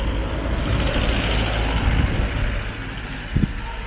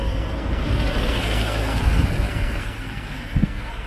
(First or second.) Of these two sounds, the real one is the first